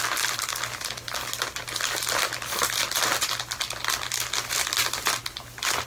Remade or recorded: recorded